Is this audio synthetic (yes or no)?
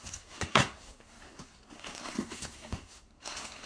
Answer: yes